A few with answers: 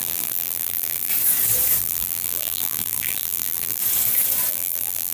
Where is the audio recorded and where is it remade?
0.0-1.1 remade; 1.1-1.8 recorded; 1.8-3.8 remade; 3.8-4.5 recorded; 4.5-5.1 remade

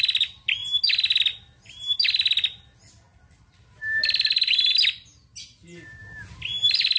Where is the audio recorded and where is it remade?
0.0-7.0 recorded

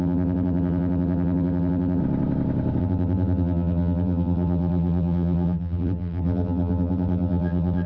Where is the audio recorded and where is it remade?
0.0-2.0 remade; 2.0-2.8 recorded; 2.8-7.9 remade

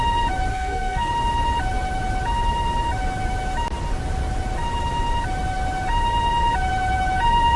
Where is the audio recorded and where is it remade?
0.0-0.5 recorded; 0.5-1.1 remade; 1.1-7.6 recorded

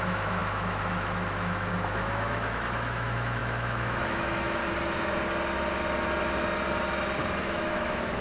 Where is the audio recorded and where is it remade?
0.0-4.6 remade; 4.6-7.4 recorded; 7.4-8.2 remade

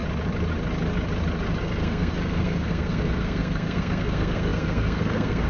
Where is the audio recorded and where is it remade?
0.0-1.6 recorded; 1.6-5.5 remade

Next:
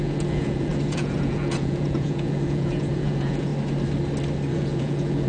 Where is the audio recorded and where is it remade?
0.0-3.5 remade; 3.5-4.5 recorded; 4.5-5.3 remade

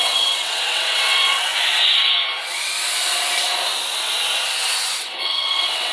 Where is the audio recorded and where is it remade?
0.0-1.5 remade; 1.5-5.0 recorded; 5.0-5.9 remade